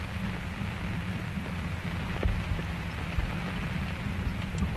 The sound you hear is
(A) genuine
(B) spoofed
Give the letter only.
A